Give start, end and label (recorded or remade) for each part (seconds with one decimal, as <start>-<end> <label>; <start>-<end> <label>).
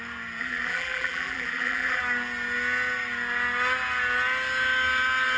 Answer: 0.0-0.4 recorded; 0.4-2.0 remade; 2.0-5.4 recorded